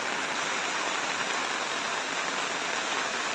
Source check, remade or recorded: recorded